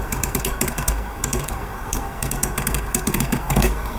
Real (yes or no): no